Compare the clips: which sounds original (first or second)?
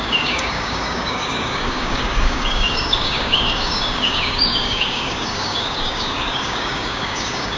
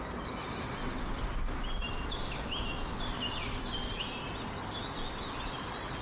second